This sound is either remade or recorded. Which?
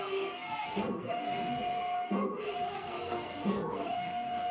remade